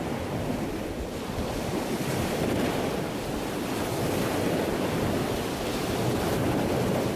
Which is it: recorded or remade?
recorded